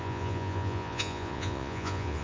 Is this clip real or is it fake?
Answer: fake